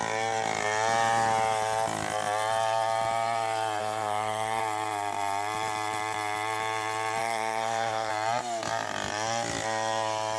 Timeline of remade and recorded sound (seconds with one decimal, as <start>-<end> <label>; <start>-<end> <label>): 0.0-3.8 recorded; 3.8-4.6 remade; 4.6-7.2 recorded; 7.2-8.1 remade; 8.1-10.4 recorded

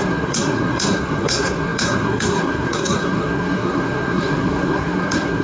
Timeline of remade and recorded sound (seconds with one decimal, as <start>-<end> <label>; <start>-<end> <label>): 0.0-5.4 remade

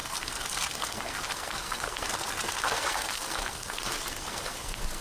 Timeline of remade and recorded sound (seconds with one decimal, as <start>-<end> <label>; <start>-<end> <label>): 0.0-5.0 remade

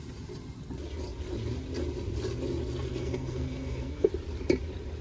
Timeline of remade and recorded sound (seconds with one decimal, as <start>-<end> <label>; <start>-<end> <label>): 0.0-2.9 recorded; 2.9-4.1 remade; 4.1-5.0 recorded

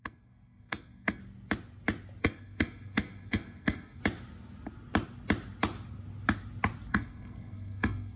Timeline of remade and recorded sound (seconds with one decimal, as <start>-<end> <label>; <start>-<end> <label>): 0.0-1.2 remade; 1.2-2.2 recorded; 2.2-4.0 remade; 4.0-6.9 recorded; 6.9-8.2 remade